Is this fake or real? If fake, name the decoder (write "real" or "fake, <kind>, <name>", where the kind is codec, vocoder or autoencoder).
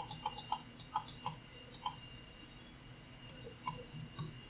real